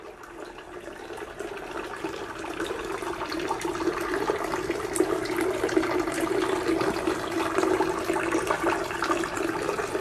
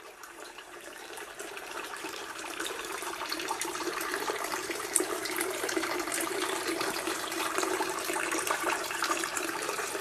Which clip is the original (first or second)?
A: first